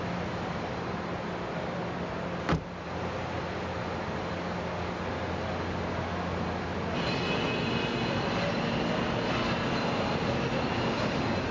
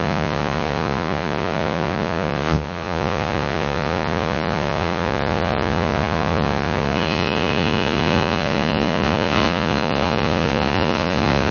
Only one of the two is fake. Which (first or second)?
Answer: second